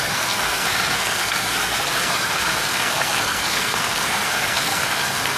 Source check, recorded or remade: remade